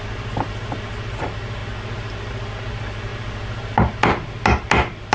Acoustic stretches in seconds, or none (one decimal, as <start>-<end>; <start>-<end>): 0.0-5.1